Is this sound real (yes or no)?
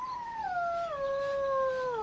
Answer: yes